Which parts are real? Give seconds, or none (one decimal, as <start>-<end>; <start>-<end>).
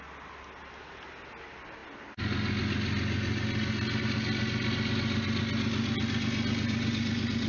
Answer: 0.0-7.5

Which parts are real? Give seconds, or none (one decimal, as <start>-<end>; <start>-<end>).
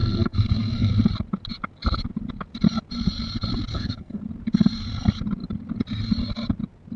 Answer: 0.9-3.7; 4.2-7.0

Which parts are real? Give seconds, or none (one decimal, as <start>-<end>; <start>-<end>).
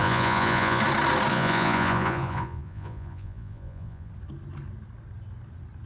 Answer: 0.8-1.3; 4.1-5.9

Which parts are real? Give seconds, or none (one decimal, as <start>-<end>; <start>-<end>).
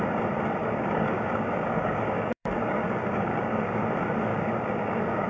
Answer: 0.0-0.6; 3.8-4.3